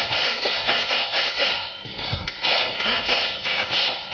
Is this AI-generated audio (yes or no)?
yes